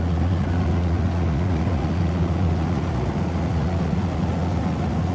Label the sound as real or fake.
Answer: fake